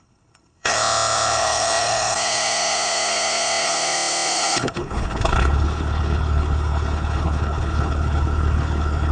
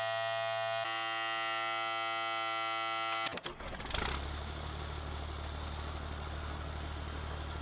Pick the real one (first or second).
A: second